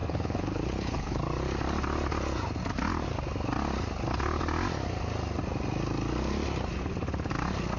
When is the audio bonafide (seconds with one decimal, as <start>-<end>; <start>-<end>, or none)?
1.2-7.8